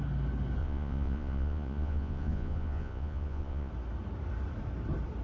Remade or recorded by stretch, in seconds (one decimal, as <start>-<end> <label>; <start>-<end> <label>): 0.0-0.6 recorded; 0.6-3.7 remade; 3.7-5.2 recorded